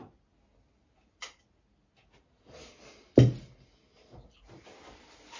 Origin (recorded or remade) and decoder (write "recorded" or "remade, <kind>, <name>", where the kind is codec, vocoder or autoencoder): recorded